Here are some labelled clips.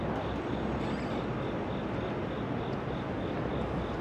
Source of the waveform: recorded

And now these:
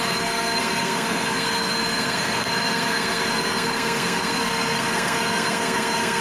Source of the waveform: remade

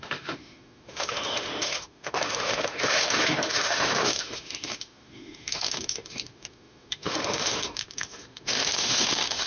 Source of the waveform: remade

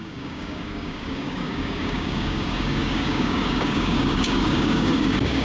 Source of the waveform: remade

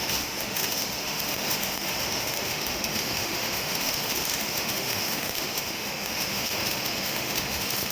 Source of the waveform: remade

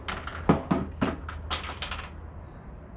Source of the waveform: recorded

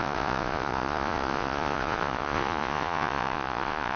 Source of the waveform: remade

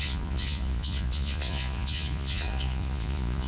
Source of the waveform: remade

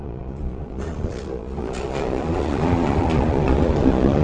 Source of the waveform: remade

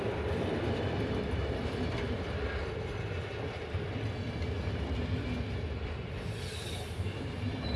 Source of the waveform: recorded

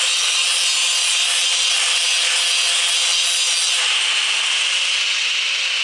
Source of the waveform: recorded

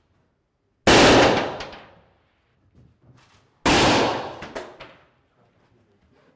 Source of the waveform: recorded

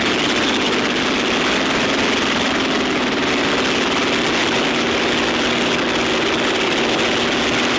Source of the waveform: recorded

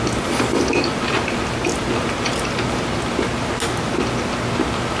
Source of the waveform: recorded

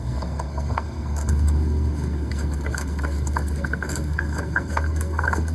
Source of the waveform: remade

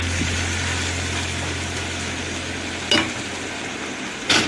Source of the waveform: recorded